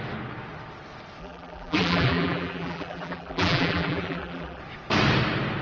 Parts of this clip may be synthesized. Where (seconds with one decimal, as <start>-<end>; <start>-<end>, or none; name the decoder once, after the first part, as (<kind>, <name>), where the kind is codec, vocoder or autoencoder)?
1.2-4.6 (vocoder, BigVGAN v2)